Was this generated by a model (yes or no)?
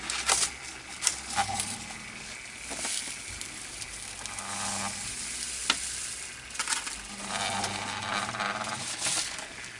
no